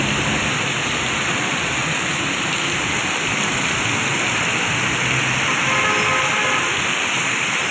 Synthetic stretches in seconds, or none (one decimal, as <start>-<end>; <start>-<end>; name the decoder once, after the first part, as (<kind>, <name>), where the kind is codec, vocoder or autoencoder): none